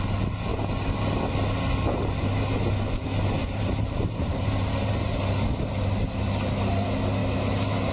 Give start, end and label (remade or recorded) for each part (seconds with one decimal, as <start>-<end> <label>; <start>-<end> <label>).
0.0-3.4 recorded; 3.4-4.9 remade; 4.9-7.9 recorded